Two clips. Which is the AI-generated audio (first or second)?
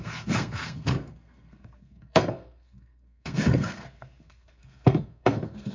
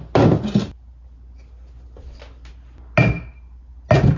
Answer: first